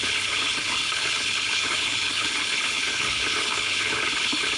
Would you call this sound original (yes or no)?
no